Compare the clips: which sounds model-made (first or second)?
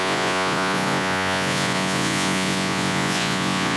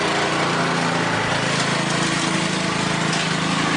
first